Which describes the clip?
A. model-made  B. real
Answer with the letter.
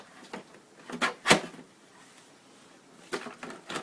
B